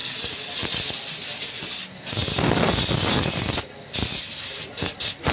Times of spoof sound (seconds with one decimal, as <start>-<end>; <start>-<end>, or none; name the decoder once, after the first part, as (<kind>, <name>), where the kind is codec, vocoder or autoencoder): none